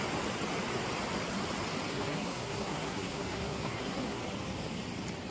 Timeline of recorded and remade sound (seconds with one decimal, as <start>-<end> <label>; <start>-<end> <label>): 0.0-1.9 recorded; 1.9-4.2 remade; 4.2-5.3 recorded